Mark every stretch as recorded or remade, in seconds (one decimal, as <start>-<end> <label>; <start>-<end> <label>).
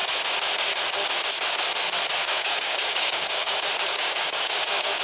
0.0-2.2 recorded; 2.2-3.5 remade; 3.5-3.9 recorded; 3.9-5.0 remade